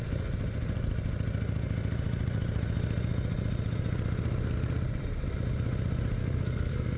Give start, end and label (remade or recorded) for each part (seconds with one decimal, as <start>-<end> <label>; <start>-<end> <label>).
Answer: 0.0-6.2 recorded; 6.2-7.0 remade